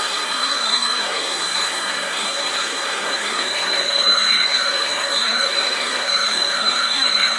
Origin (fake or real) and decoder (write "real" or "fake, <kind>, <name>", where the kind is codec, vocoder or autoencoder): fake, codec, SNAC